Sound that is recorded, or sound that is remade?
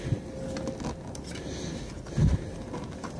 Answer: recorded